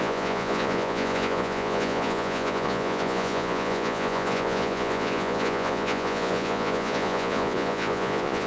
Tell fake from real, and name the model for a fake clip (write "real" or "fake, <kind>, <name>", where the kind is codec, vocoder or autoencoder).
fake, vocoder, Vocos